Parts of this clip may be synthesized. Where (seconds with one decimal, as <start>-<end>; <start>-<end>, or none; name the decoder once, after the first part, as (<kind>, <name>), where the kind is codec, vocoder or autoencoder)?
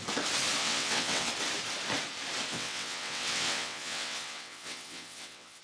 0.6-1.3 (vocoder, WaveNeXt); 2.5-5.6